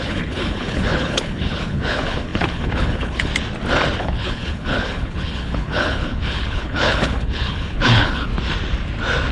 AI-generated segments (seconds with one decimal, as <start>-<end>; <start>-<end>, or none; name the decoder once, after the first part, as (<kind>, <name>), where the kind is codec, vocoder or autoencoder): 0.0-3.3 (codec, HILCodec); 4.0-8.3